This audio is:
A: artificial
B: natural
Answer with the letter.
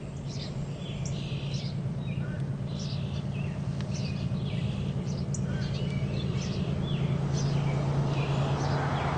B